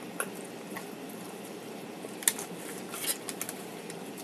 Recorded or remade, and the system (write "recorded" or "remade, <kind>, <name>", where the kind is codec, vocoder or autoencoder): recorded